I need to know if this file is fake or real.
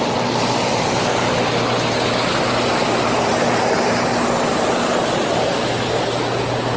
real